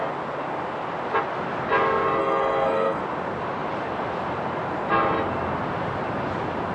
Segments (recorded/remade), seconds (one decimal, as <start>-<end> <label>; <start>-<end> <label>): 0.0-2.2 recorded; 2.2-3.0 remade; 3.0-6.7 recorded